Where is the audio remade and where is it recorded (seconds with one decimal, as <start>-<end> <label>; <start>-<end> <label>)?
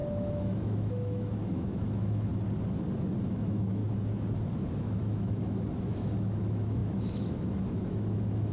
0.0-2.3 remade; 2.3-3.3 recorded; 3.3-3.8 remade; 3.8-4.7 recorded; 4.7-8.5 remade